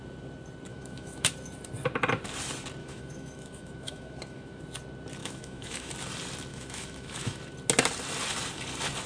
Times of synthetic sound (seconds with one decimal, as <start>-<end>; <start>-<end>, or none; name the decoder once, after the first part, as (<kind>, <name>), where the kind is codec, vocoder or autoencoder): 0.7-1.3 (autoencoder, DAC-VAE); 2.8-4.6; 5.2-5.9; 6.5-7.4